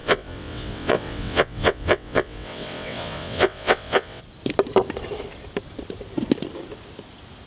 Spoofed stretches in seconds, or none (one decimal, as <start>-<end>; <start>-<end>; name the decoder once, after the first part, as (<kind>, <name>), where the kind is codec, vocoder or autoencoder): 0.0-4.2 (vocoder, WaveNeXt)